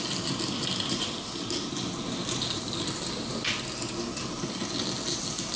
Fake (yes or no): no